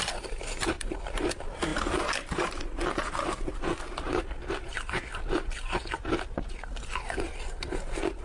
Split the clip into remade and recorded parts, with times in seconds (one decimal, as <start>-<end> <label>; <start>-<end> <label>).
0.0-8.2 remade